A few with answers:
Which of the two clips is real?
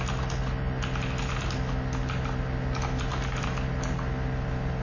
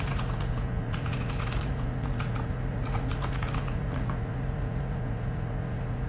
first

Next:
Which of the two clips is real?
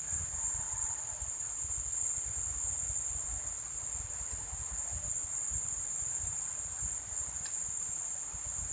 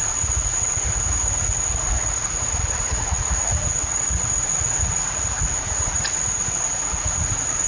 first